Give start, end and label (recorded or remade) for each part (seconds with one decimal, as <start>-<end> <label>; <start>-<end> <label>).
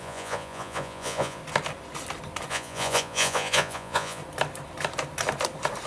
0.0-1.4 remade; 1.4-2.5 recorded; 2.5-4.2 remade; 4.2-5.9 recorded